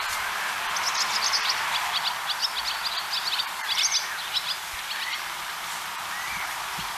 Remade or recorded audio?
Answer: recorded